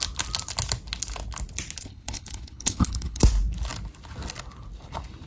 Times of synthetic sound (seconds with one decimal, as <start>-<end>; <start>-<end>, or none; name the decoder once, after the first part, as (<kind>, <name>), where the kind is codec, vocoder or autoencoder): 1.8-3.2 (codec, HILCodec)